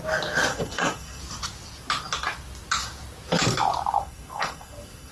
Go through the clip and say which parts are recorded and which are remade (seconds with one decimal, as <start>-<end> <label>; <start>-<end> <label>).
0.0-0.5 recorded; 0.5-1.2 remade; 1.2-4.0 recorded; 4.0-5.1 remade